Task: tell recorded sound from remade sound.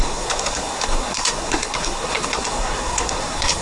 remade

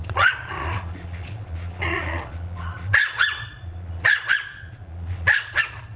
remade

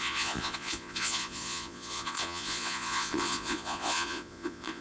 remade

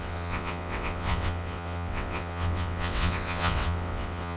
remade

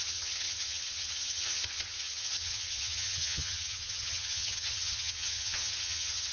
remade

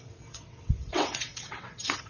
remade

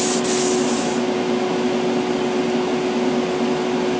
recorded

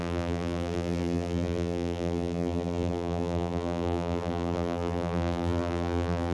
remade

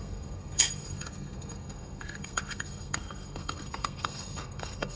remade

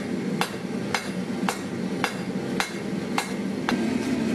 recorded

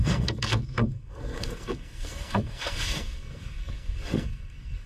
remade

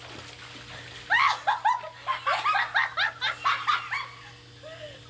recorded